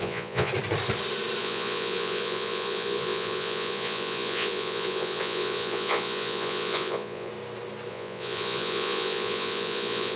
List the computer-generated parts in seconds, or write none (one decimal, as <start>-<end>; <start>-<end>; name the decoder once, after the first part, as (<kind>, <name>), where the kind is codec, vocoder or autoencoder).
0.0-0.5 (vocoder, Vocos); 1.4-7.3; 7.9-10.2